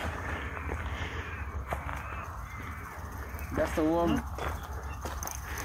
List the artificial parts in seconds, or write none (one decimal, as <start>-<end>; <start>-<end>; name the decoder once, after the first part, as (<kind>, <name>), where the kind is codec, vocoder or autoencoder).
0.0-1.9 (vocoder, BigVGAN v2)